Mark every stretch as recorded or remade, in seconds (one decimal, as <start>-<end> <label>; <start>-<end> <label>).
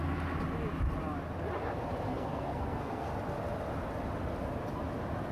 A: 0.0-2.1 recorded; 2.1-3.1 remade; 3.1-5.3 recorded